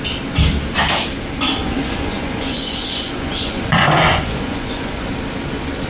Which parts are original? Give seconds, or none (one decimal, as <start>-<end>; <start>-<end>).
0.0-1.6; 5.1-5.9